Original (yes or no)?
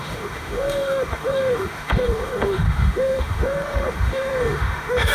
no